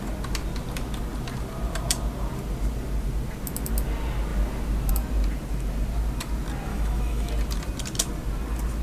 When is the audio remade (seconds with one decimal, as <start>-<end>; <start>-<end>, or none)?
6.7-7.3